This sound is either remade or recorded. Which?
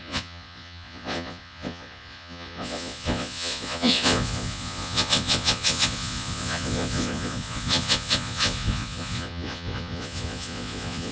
remade